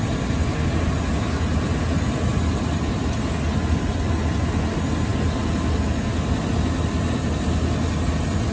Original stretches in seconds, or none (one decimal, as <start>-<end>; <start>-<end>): 0.0-8.5